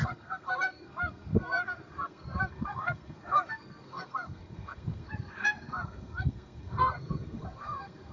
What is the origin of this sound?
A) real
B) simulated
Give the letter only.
B